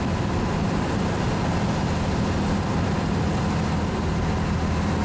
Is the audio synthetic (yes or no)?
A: no